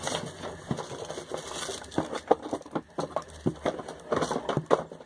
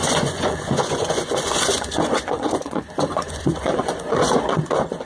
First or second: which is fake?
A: second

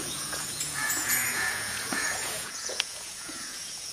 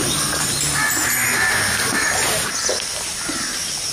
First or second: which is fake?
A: first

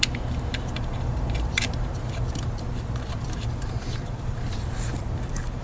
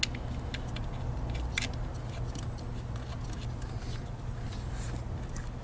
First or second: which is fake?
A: first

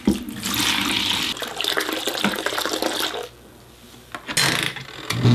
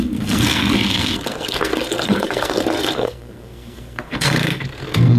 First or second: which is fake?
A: second